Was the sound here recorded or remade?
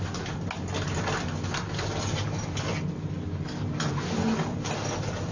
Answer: recorded